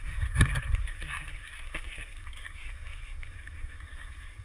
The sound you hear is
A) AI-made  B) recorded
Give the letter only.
A